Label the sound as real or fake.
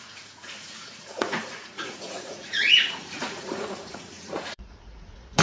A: fake